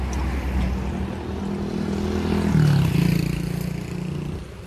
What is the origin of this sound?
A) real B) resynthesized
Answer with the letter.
A